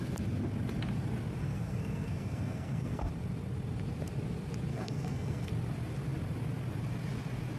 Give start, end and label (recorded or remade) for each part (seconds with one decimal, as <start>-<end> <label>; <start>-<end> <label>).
0.0-1.4 recorded; 1.4-3.1 remade; 3.1-4.7 recorded; 4.7-5.5 remade; 5.5-7.6 recorded